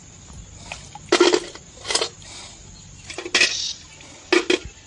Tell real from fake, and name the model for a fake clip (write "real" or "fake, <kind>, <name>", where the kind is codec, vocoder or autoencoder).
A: real